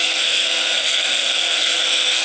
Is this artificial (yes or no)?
yes